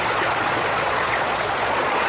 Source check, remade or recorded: remade